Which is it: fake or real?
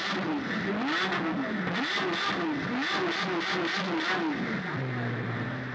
real